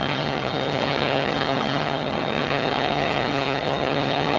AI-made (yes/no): yes